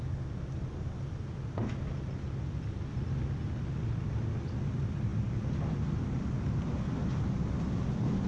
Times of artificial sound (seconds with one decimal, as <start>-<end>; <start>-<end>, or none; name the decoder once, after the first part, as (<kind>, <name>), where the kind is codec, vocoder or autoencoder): none